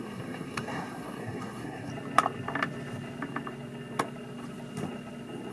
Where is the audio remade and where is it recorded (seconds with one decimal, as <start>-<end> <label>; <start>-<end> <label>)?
0.0-1.9 remade; 1.9-5.5 recorded